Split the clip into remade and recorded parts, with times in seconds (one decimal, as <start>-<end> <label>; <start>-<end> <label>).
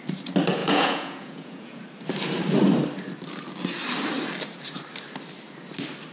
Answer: 0.0-0.6 recorded; 0.6-1.8 remade; 1.8-6.1 recorded